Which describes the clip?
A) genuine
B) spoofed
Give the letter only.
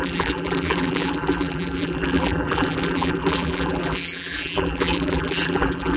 B